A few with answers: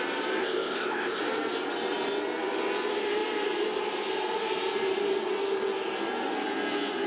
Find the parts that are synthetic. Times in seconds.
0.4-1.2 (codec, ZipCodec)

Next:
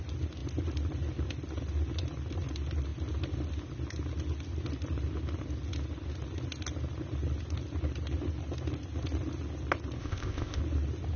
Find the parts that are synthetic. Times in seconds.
10.0-10.6 (codec, ZipCodec)

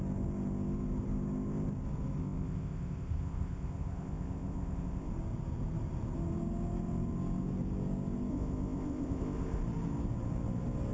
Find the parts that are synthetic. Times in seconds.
2.2-5.1 (codec, ZipCodec); 8.3-9.6

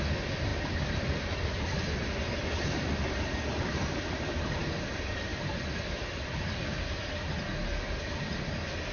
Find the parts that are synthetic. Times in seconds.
none